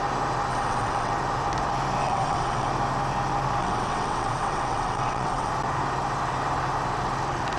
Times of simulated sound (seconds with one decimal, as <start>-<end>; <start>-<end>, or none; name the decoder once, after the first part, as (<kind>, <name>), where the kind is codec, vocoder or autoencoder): 0.5-1.1 (vocoder, WaveNeXt); 2.0-2.7; 3.6-5.5